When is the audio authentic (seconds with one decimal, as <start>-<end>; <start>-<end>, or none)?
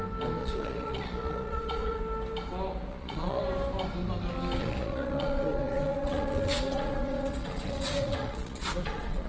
0.0-0.4; 2.0-2.9; 3.4-4.6